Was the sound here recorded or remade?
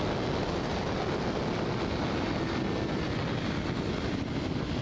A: recorded